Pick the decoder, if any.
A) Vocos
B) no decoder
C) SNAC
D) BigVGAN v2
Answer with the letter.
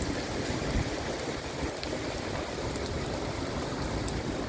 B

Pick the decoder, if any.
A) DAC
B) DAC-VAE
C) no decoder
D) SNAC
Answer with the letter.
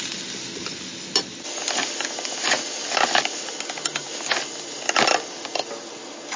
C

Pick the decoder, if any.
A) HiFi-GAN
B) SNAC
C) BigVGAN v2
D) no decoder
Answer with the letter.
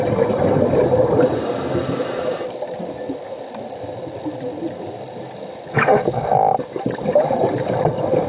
D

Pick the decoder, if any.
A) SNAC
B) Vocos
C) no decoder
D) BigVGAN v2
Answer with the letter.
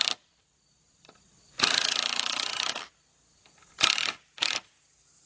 C